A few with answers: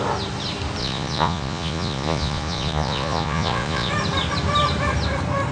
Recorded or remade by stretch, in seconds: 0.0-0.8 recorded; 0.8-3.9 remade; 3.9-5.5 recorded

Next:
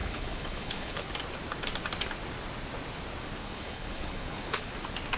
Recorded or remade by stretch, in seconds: 0.0-1.1 remade; 1.1-3.4 recorded; 3.4-4.7 remade; 4.7-5.2 recorded

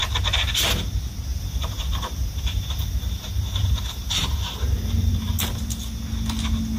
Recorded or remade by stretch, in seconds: 0.0-1.3 recorded; 1.3-5.4 remade; 5.4-6.8 recorded

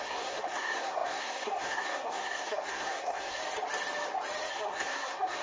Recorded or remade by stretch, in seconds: 0.0-3.4 remade; 3.4-4.5 recorded; 4.5-5.4 remade

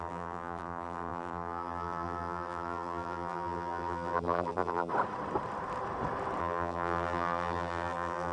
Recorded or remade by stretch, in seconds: 0.0-4.9 remade; 4.9-6.4 recorded; 6.4-8.3 remade

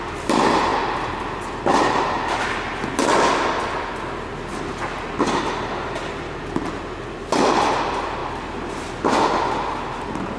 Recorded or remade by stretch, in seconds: 0.0-10.4 recorded

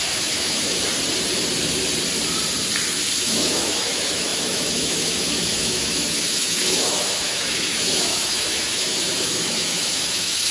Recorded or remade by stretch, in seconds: 0.0-0.9 remade; 0.9-3.2 recorded; 3.2-10.5 remade